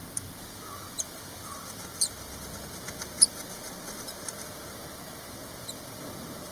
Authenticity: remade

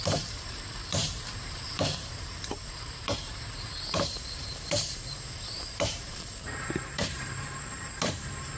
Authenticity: remade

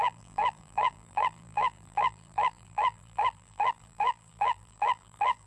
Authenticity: remade